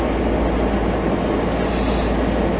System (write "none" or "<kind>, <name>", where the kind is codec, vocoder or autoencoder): none